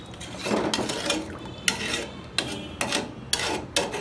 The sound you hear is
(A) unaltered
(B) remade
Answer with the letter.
A